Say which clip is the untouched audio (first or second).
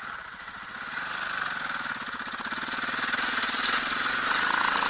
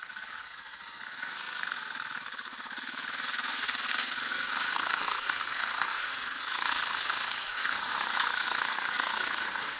first